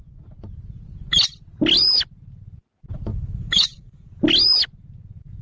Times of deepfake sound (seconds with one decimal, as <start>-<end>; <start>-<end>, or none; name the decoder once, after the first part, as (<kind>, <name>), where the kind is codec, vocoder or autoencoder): 3.1-4.2 (codec, DAC)